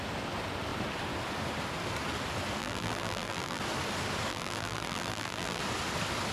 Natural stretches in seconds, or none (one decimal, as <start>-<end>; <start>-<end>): 0.0-2.6; 3.6-4.3; 5.6-6.3